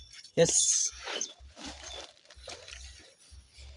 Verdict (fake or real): fake